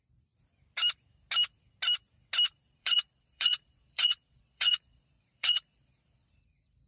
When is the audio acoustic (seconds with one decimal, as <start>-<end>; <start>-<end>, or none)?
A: 0.0-2.5; 6.3-6.9